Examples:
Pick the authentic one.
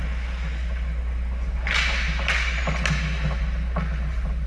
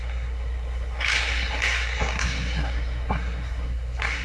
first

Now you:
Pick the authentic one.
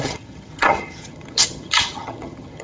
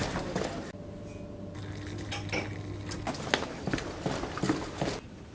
second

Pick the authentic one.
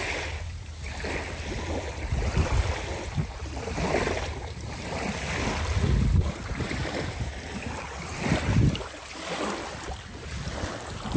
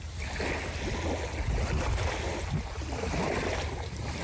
second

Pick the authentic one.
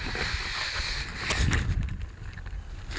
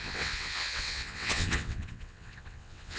first